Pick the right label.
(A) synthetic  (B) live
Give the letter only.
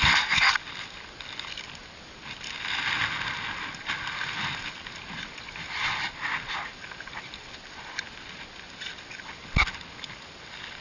B